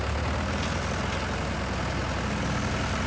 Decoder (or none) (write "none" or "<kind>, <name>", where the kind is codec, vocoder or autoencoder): none